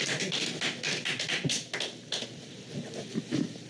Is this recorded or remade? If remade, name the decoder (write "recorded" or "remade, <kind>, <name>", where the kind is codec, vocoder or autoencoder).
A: recorded